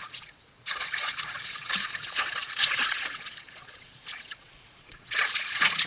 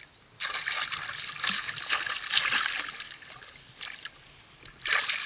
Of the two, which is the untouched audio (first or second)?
second